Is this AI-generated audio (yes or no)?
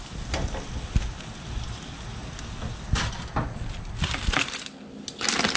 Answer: no